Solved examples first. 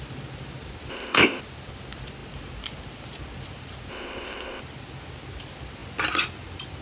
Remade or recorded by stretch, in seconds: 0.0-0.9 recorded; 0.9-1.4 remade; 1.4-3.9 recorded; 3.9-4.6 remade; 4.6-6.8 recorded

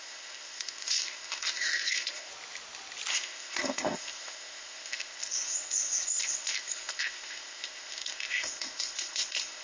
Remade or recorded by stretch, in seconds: 0.0-2.3 remade; 2.3-3.1 recorded; 3.1-9.6 remade

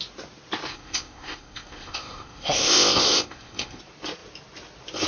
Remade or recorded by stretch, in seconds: 0.0-0.7 recorded; 0.7-3.8 remade; 3.8-5.1 recorded

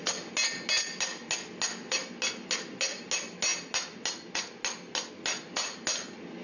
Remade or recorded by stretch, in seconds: 0.0-6.4 recorded

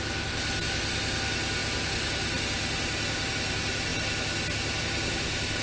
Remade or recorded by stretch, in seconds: 0.0-5.6 recorded

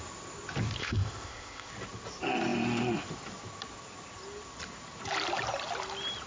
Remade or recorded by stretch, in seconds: 0.0-0.8 recorded; 0.8-1.7 remade; 1.7-6.3 recorded

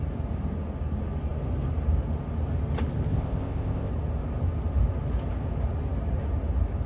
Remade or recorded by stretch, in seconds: 0.0-3.1 recorded; 3.1-3.9 remade; 3.9-6.9 recorded